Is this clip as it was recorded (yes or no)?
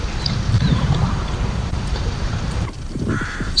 no